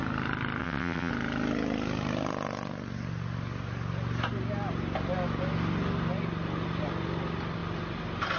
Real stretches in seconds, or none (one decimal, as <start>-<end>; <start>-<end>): 0.0-0.6; 1.1-8.4